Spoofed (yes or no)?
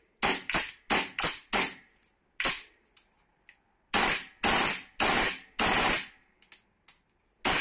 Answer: no